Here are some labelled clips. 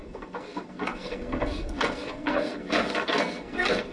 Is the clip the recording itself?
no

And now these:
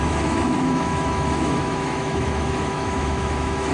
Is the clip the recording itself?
no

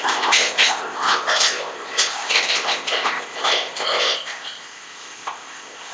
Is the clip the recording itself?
no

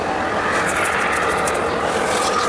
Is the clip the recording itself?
yes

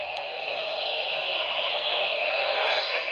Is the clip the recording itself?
no